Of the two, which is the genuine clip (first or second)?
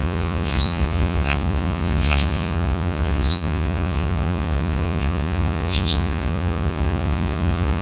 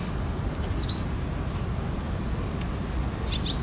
second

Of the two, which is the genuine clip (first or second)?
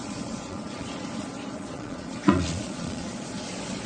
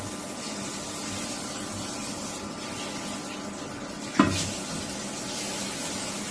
second